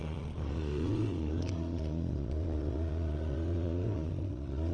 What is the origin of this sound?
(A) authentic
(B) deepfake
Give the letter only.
B